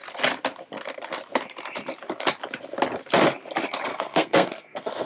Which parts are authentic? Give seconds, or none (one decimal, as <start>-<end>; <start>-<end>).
0.0-3.9